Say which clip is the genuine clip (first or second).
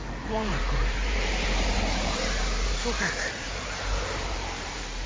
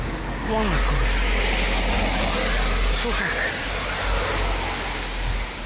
second